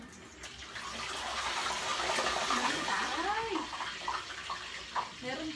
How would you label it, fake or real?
real